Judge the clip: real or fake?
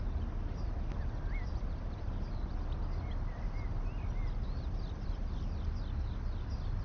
real